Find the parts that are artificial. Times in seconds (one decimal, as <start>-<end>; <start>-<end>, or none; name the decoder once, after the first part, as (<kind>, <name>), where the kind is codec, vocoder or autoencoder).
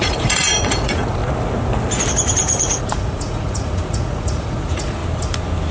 0.0-1.2 (vocoder, Vocos); 2.3-5.0